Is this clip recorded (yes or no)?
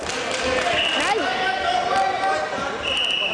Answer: yes